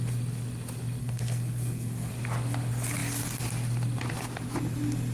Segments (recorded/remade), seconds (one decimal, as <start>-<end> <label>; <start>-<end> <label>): 0.0-1.0 recorded; 1.0-2.1 remade; 2.1-5.1 recorded